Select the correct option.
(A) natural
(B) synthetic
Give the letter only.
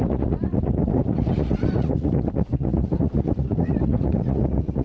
B